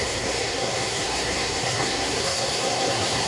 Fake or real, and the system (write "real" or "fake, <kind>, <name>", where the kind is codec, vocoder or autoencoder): fake, codec, SNAC